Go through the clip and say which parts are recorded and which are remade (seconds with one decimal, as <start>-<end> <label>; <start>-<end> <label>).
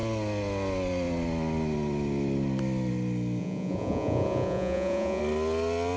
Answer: 0.0-3.4 recorded; 3.4-5.2 remade; 5.2-6.0 recorded